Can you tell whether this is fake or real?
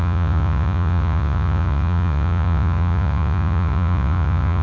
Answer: fake